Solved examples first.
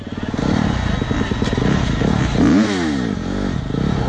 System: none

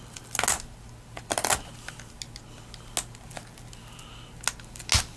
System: none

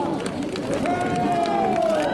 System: none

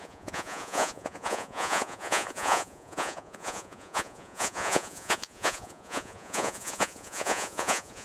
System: vocoder, Vocos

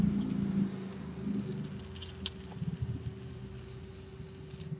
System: none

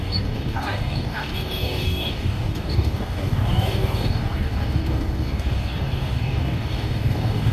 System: codec, DAC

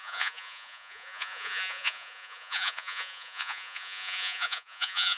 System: vocoder, Vocos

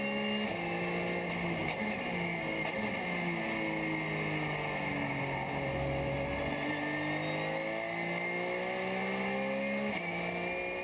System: none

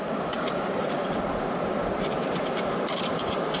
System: vocoder, BigVGAN v2